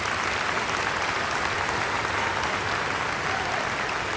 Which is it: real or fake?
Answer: real